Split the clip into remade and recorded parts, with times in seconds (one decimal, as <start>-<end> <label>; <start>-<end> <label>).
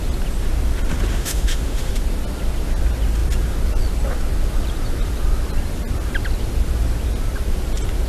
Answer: 0.0-1.1 recorded; 1.1-1.9 remade; 1.9-8.1 recorded